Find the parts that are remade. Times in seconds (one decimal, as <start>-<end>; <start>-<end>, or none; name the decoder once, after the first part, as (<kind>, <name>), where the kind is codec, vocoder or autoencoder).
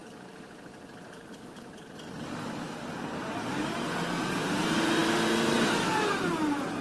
1.0-6.8 (vocoder, BigVGAN v2)